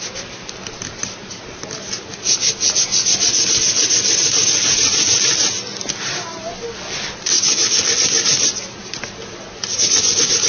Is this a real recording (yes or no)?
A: yes